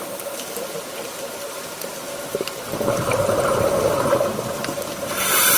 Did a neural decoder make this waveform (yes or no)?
no